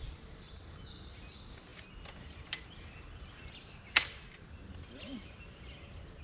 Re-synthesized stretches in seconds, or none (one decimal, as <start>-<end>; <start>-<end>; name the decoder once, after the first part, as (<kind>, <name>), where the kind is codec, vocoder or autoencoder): none